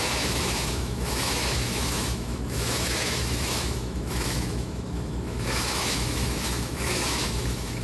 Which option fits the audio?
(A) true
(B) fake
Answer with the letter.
B